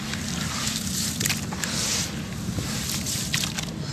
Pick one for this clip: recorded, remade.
recorded